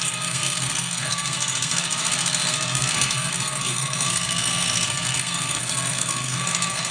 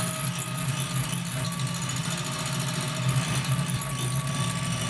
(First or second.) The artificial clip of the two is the first